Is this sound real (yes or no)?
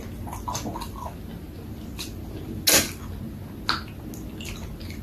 yes